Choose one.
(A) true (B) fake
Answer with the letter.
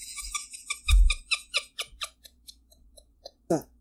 B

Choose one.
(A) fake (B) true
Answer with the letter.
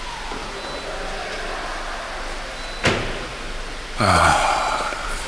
B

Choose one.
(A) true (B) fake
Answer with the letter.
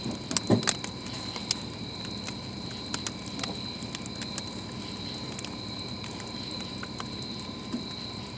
A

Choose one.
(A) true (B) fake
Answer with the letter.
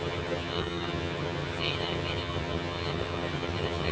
B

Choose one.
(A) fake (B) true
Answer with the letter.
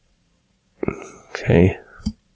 A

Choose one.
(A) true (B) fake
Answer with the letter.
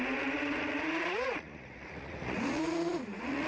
B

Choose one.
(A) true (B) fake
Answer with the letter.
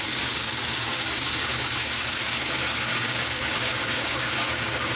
B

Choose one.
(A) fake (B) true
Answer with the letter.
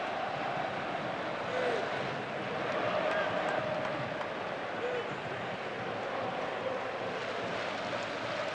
B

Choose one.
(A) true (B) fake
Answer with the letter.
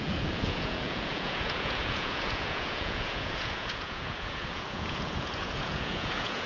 B